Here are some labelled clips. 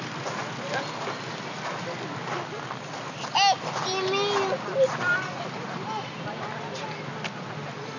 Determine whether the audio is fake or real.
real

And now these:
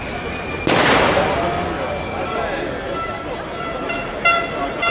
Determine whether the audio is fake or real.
real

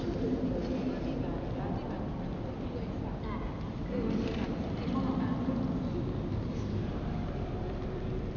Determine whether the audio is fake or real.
real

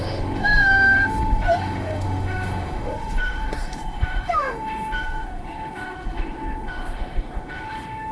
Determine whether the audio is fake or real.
fake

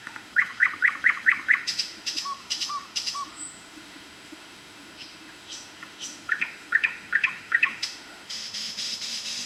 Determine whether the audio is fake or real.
fake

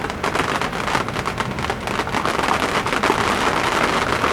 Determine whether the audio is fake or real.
real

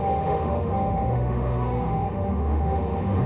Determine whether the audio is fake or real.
fake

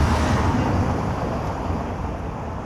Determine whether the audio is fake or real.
real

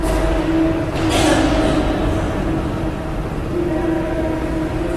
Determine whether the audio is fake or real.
real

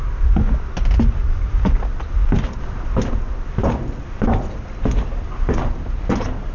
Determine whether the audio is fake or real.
real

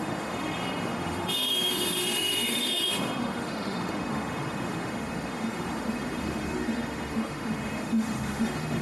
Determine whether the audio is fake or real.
fake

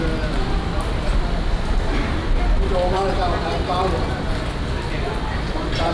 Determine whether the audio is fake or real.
real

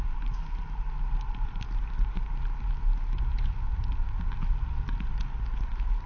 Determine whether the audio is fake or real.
real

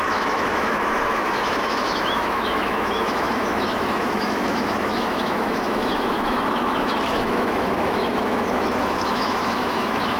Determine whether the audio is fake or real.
fake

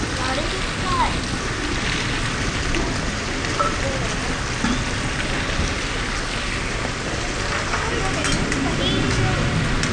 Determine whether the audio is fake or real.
real